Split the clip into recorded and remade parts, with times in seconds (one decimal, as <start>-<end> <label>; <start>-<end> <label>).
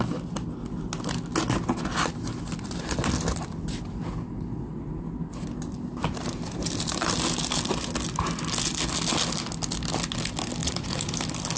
0.0-4.5 recorded; 4.5-5.0 remade; 5.0-10.6 recorded; 10.6-11.1 remade; 11.1-11.6 recorded